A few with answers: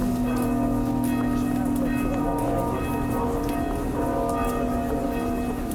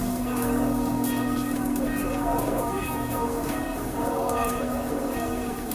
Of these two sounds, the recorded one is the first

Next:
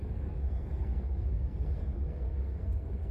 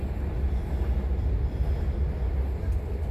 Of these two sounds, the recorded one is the second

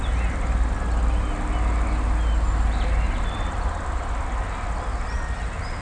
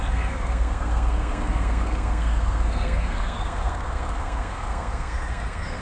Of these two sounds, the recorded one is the first